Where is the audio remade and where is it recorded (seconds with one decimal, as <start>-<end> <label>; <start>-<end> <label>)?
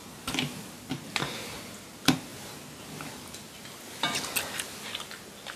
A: 0.0-5.6 recorded